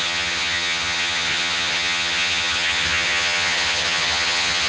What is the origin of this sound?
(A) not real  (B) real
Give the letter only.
A